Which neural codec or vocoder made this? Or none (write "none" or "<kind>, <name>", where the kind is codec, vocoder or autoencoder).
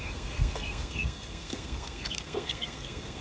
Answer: codec, SNAC